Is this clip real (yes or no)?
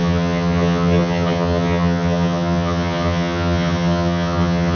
no